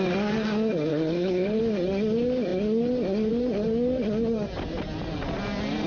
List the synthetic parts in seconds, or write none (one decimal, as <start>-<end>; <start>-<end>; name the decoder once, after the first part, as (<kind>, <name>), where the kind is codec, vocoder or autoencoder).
0.9-1.6 (codec, HILCodec)